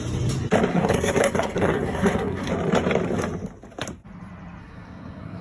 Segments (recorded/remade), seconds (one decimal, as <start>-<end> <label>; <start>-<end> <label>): 0.0-0.7 recorded; 0.7-2.5 remade; 2.5-4.6 recorded; 4.6-5.4 remade